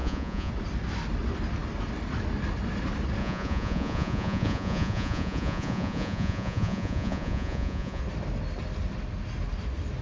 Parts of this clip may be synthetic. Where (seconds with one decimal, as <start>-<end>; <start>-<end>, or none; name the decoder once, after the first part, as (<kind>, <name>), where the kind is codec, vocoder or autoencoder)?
0.0-0.5 (vocoder, Vocos); 3.2-8.0